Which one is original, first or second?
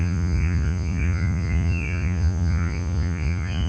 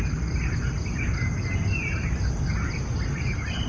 second